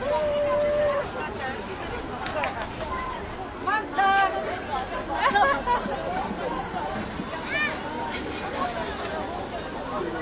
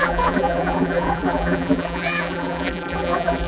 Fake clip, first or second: second